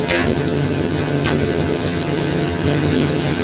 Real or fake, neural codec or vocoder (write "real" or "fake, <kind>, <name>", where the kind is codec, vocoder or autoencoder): fake, vocoder, HiFi-GAN